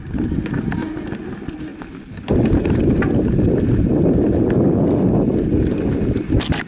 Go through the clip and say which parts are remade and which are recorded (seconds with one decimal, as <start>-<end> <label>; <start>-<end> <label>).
0.0-6.7 recorded